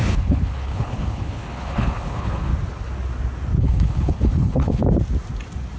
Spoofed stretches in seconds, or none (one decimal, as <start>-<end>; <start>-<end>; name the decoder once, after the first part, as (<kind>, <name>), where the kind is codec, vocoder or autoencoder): 0.0-2.5 (codec, HILCodec); 3.6-4.8